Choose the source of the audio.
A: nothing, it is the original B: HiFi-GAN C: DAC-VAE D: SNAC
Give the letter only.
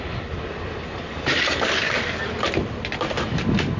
A